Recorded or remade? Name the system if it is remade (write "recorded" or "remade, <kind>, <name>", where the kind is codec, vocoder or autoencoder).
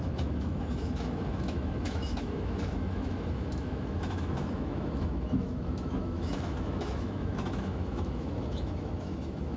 remade, autoencoder, DAC-VAE